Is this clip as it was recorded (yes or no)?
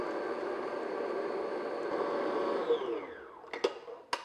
yes